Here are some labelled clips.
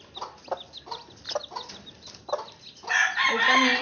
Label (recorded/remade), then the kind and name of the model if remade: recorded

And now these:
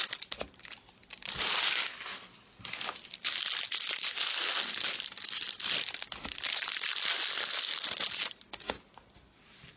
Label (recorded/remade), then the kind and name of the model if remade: recorded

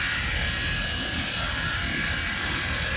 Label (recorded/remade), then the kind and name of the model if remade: recorded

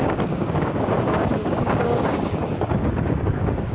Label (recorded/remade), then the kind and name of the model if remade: remade, codec, DAC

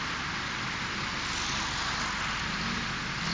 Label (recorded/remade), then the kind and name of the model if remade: recorded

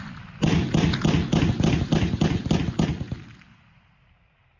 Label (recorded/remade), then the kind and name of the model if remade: recorded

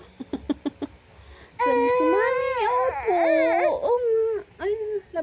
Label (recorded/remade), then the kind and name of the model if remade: recorded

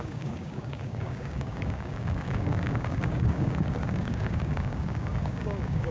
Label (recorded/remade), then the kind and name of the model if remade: remade, codec, DAC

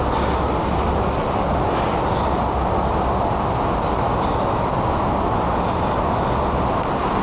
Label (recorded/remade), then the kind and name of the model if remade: recorded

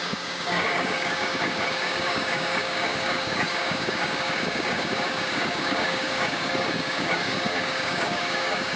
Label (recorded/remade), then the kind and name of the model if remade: remade, codec, DAC